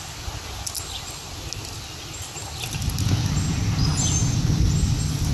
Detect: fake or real real